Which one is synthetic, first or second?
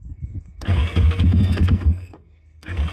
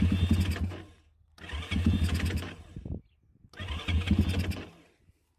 first